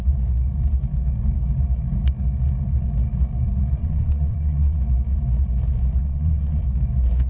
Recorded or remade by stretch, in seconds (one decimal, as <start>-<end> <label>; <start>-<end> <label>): 0.0-3.8 recorded; 3.8-4.8 remade; 4.8-6.0 recorded; 6.0-6.6 remade; 6.6-7.3 recorded